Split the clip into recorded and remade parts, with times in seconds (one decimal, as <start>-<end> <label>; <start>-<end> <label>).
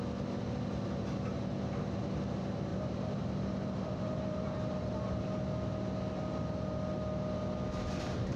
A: 0.0-2.7 recorded; 2.7-5.2 remade; 5.2-8.4 recorded